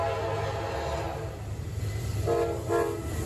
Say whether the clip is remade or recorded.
recorded